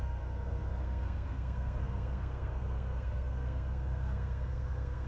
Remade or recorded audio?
remade